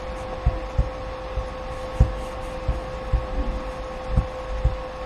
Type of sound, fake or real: real